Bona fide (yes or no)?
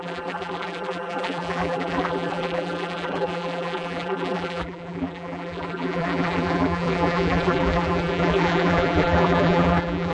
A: no